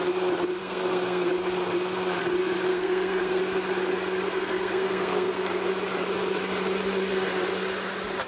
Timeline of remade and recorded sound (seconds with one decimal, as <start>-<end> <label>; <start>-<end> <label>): 0.0-0.6 recorded; 0.6-1.3 remade; 1.3-2.7 recorded; 2.7-3.4 remade; 3.4-4.3 recorded; 4.3-5.6 remade; 5.6-8.3 recorded